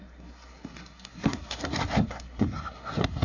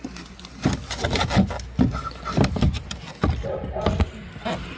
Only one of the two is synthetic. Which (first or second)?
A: first